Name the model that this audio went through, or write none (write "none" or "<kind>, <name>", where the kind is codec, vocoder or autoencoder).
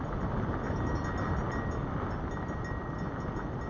none